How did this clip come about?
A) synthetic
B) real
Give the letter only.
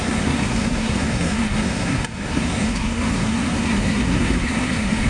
A